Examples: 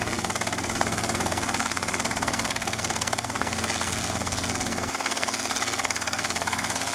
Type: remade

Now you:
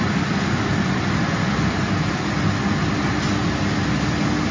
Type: recorded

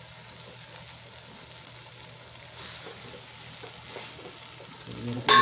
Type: recorded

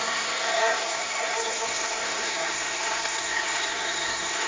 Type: remade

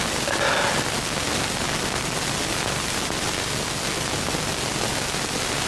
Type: recorded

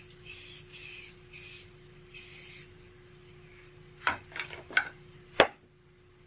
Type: recorded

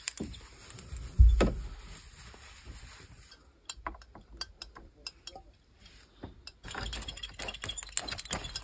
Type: recorded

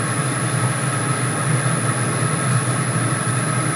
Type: recorded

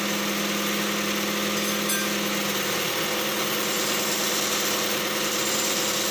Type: recorded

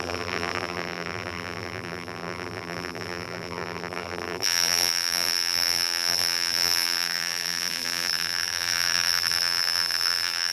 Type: remade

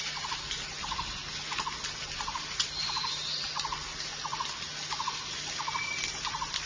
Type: recorded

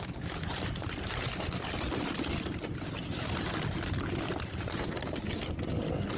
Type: recorded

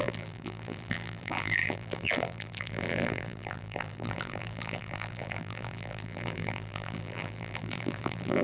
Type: remade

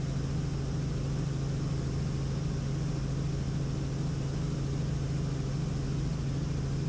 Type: recorded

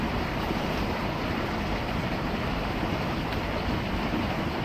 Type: recorded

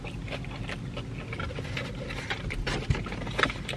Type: recorded